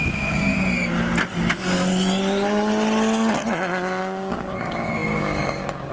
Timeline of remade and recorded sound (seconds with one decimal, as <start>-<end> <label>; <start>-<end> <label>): 0.0-0.5 remade; 0.5-4.0 recorded; 4.0-5.9 remade